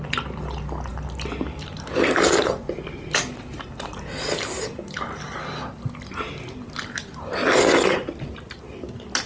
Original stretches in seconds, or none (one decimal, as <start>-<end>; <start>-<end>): 0.0-9.3